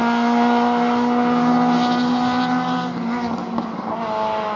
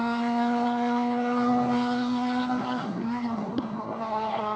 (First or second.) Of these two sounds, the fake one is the second